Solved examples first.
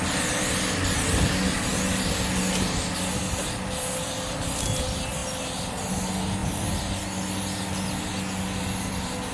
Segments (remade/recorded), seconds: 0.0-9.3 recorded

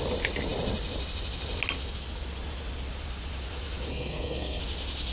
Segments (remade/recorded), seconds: 0.0-3.9 recorded; 3.9-4.6 remade; 4.6-5.1 recorded

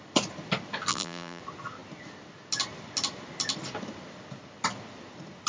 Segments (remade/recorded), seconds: 0.0-0.9 recorded; 0.9-1.4 remade; 1.4-5.5 recorded

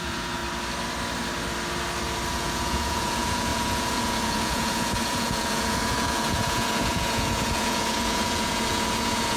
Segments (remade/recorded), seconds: 0.0-0.4 remade; 0.4-2.3 recorded; 2.3-9.4 remade

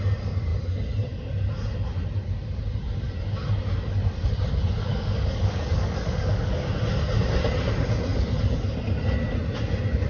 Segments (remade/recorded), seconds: 0.0-4.9 recorded; 4.9-6.7 remade; 6.7-10.1 recorded

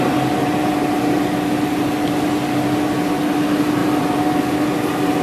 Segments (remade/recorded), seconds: 0.0-3.8 recorded; 3.8-4.4 remade; 4.4-5.2 recorded

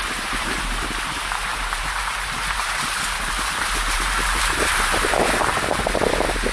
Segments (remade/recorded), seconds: 0.0-6.5 remade

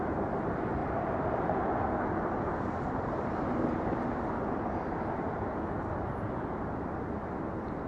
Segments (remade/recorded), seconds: 0.0-7.9 recorded